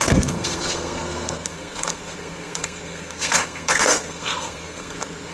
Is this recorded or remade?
remade